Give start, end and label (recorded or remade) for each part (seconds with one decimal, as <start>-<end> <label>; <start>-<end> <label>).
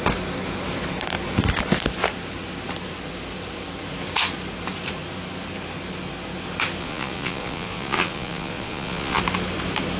0.0-6.8 recorded; 6.8-9.2 remade; 9.2-10.0 recorded